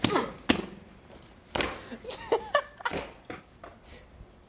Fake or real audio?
real